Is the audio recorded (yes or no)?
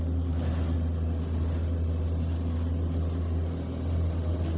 yes